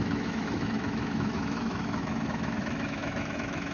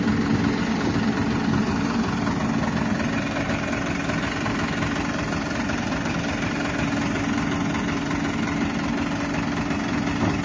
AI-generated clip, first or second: first